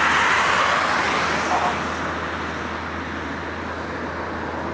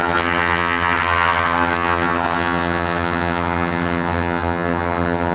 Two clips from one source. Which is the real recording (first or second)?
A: first